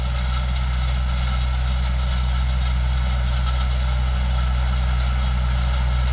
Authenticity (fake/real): real